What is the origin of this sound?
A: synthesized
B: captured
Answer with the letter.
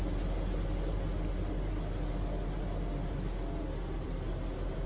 B